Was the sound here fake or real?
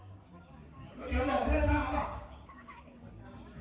fake